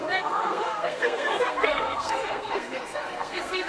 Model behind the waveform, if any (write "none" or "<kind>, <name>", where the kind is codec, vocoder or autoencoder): codec, SNAC